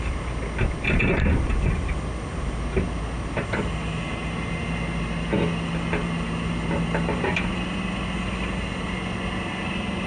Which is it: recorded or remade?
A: recorded